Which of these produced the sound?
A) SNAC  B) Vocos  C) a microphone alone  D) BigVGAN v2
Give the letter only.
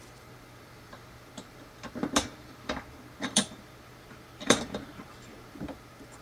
D